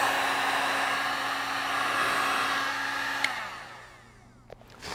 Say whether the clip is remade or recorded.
recorded